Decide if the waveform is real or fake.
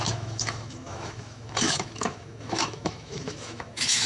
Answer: fake